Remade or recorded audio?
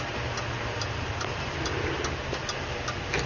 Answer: recorded